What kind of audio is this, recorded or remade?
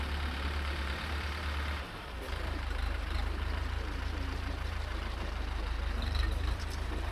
remade